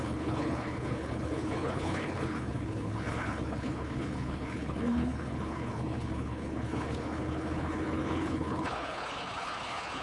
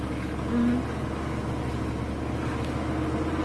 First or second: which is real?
second